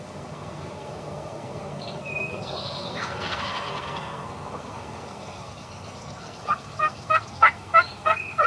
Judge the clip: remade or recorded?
remade